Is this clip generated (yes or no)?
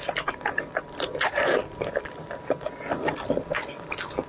no